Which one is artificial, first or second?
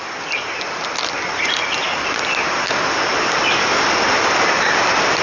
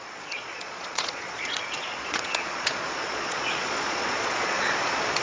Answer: second